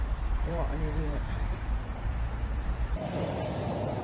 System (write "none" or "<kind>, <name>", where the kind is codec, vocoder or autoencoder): vocoder, BigVGAN v2